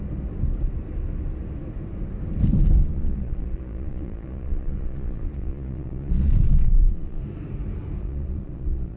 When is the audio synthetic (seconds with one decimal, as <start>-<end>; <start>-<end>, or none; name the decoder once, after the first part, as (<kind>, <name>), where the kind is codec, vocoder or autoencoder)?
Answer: 2.8-7.2 (vocoder, Vocos); 8.0-9.0